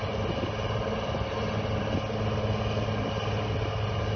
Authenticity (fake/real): real